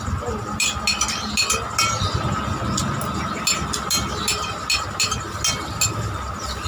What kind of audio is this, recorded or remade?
recorded